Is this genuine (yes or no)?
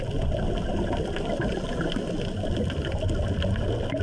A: yes